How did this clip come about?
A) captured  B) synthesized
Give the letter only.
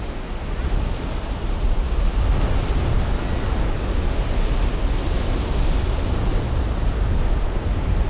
A